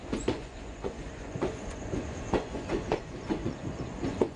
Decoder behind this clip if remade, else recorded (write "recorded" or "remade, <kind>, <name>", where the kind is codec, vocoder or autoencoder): remade, vocoder, Vocos